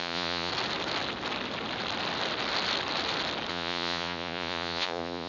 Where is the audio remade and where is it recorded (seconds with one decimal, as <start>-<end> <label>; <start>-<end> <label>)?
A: 0.0-0.5 remade; 0.5-3.5 recorded; 3.5-5.3 remade

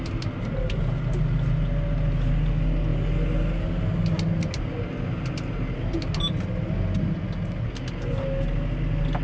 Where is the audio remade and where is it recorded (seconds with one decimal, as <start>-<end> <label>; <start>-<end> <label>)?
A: 0.0-9.2 recorded

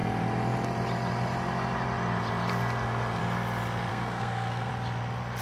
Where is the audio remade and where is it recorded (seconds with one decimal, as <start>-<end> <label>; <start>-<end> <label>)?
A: 0.0-3.9 recorded; 3.9-4.7 remade; 4.7-5.4 recorded

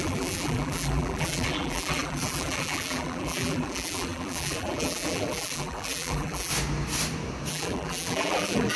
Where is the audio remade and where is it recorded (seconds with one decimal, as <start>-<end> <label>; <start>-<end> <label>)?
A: 0.0-6.5 remade; 6.5-7.5 recorded; 7.5-8.8 remade

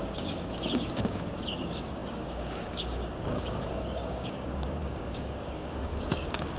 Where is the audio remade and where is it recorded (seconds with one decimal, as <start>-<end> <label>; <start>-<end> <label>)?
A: 0.0-6.6 remade

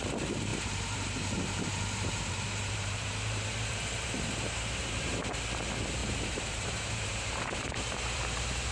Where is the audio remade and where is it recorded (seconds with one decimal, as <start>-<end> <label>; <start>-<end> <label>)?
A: 0.0-0.5 recorded; 0.5-5.3 remade; 5.3-6.0 recorded; 6.0-8.7 remade

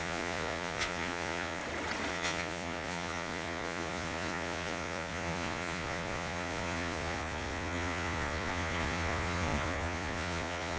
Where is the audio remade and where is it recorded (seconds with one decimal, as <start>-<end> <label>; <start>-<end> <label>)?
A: 0.0-1.6 remade; 1.6-2.1 recorded; 2.1-10.8 remade

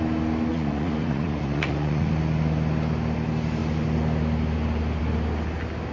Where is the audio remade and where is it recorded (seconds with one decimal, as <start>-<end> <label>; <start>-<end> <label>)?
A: 0.0-0.5 recorded; 0.5-2.1 remade; 2.1-5.9 recorded